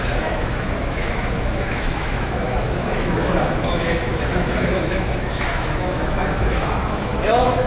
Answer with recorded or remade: remade